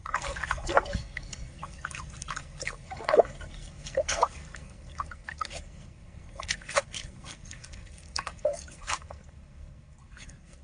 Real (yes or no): no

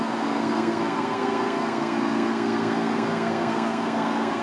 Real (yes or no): no